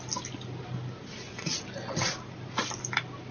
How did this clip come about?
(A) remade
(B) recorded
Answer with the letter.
B